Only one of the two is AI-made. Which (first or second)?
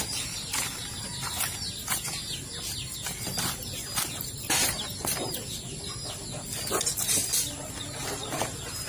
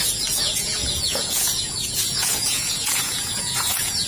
second